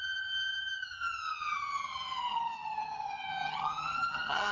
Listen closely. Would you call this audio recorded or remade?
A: remade